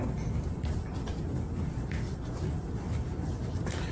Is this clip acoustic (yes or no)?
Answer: yes